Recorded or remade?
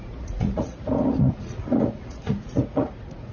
remade